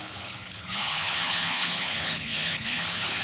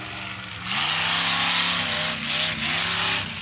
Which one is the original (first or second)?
second